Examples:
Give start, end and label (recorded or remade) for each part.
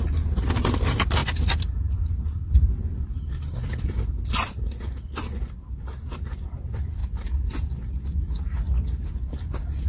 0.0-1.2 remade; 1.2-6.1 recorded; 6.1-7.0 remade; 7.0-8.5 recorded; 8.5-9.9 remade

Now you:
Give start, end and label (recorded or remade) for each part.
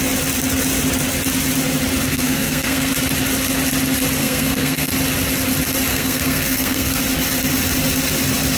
0.0-2.1 recorded; 2.1-2.9 remade; 2.9-4.2 recorded; 4.2-4.9 remade; 4.9-5.9 recorded; 5.9-7.0 remade; 7.0-8.6 recorded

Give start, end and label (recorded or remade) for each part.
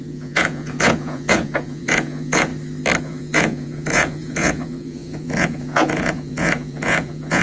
0.0-2.5 remade; 2.5-3.0 recorded; 3.0-7.4 remade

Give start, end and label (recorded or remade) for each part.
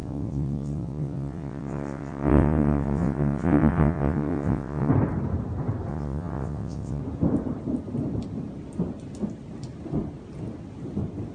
0.0-4.9 remade; 4.9-5.9 recorded; 5.9-7.0 remade; 7.0-11.3 recorded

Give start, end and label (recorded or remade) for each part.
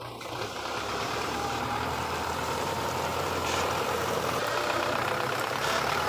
0.0-6.1 remade